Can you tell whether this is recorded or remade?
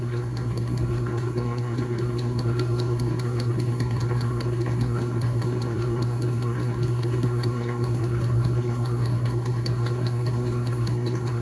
remade